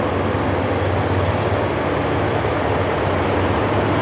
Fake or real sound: real